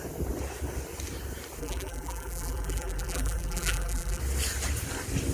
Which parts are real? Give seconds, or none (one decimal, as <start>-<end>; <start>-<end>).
0.0-1.6; 4.2-5.3